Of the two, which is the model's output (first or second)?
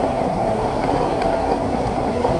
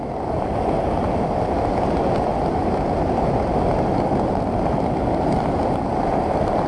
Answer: first